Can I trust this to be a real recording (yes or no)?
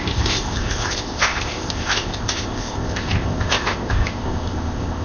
no